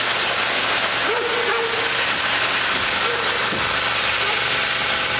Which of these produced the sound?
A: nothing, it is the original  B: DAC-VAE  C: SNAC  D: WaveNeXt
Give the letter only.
A